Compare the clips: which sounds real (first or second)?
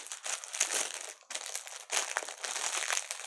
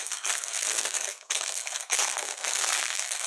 first